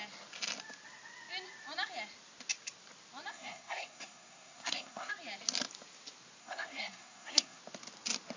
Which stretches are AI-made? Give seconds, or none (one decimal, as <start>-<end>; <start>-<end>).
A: 3.3-5.1; 6.4-7.6